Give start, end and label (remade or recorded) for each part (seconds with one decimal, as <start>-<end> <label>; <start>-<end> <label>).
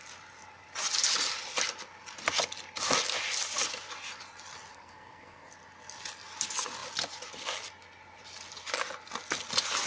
0.0-4.7 recorded; 4.7-5.5 remade; 5.5-9.9 recorded